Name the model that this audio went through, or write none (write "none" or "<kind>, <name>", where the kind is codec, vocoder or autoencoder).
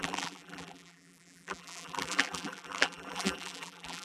vocoder, BigVGAN v2